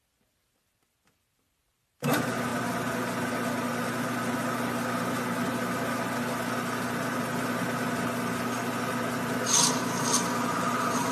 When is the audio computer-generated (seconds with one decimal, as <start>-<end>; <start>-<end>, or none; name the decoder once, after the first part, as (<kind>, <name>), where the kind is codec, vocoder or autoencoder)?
none